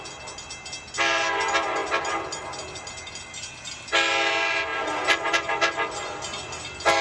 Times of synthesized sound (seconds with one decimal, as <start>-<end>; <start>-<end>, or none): none